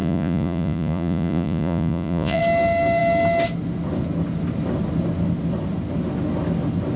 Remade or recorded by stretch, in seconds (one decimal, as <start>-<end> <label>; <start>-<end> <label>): 0.0-2.4 remade; 2.4-7.0 recorded